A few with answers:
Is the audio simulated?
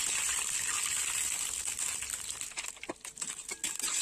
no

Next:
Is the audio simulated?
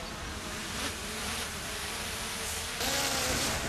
yes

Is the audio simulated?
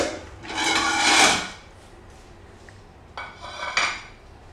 no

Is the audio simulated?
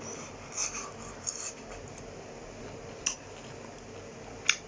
no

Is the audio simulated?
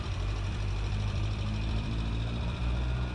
yes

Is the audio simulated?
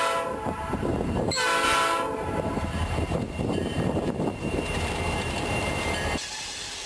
yes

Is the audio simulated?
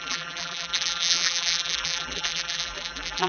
yes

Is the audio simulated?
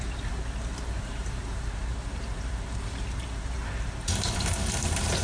yes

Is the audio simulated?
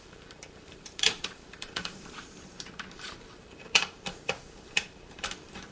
yes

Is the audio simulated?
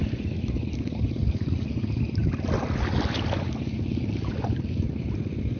no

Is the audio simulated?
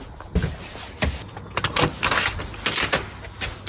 no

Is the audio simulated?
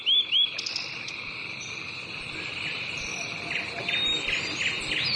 yes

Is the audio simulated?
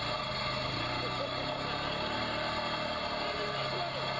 no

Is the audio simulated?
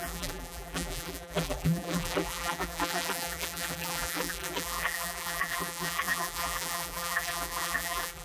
yes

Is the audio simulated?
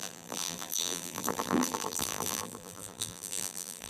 yes